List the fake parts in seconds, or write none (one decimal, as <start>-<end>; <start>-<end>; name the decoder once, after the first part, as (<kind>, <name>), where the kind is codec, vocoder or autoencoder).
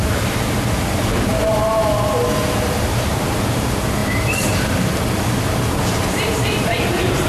0.0-1.3 (vocoder, BigVGAN v2); 2.5-7.3